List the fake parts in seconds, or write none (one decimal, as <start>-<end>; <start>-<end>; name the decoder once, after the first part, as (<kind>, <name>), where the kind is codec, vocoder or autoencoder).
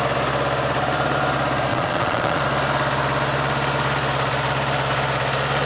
1.7-2.4 (vocoder, Vocos)